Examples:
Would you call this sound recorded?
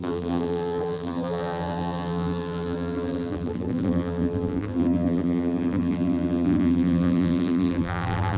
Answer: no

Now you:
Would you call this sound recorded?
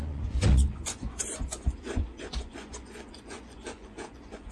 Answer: no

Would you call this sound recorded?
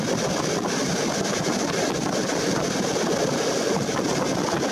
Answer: yes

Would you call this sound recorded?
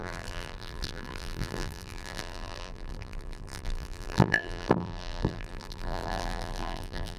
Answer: no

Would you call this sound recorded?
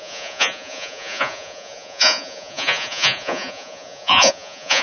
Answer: no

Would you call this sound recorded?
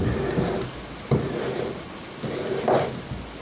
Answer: yes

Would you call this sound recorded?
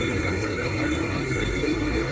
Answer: no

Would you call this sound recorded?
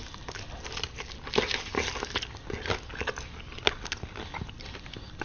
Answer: yes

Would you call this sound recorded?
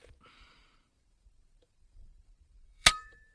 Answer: no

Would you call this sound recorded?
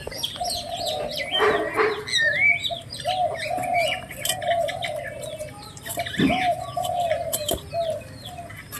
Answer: yes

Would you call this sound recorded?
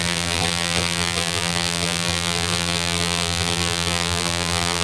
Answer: no